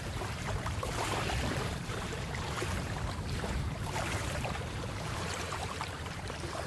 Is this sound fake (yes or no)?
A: yes